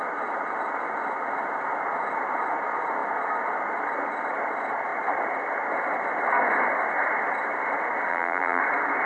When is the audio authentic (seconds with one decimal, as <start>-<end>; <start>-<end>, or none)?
0.0-8.1; 8.6-9.1